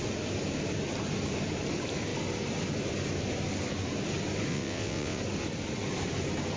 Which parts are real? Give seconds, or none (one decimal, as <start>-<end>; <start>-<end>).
0.0-4.5; 5.2-6.6

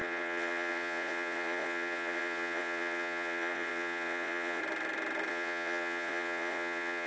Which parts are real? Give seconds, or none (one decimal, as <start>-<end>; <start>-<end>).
4.6-5.3

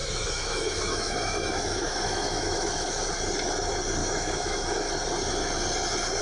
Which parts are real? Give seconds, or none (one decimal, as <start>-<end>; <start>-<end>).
3.1-4.0; 4.9-6.2

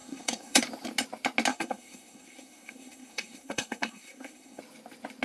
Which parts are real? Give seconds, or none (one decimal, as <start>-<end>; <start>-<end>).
0.6-1.5; 4.6-5.2

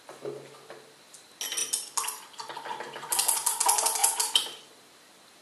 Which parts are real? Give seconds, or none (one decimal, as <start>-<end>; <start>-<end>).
0.0-1.6; 3.6-4.0; 4.6-5.4

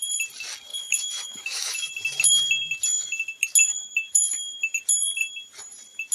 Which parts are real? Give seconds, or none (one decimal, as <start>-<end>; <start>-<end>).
0.0-0.7; 1.9-3.6; 4.2-6.1